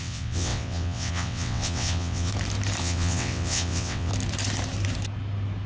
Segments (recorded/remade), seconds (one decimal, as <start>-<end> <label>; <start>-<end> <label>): 0.0-2.3 remade; 2.3-2.8 recorded; 2.8-4.1 remade; 4.1-5.7 recorded